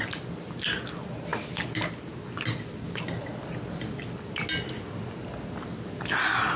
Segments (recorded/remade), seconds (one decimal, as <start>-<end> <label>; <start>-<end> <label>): 0.0-6.6 recorded